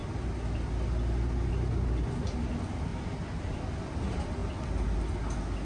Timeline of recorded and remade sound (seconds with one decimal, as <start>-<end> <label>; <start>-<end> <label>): 0.0-5.7 recorded